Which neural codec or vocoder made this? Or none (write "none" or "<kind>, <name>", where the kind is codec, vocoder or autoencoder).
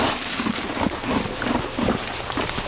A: none